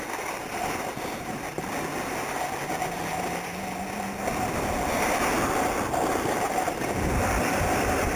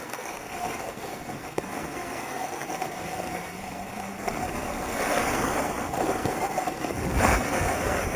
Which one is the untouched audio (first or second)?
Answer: first